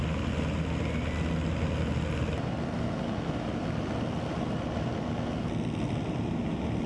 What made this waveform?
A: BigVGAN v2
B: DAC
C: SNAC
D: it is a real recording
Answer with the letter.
D